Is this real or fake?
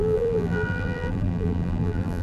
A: fake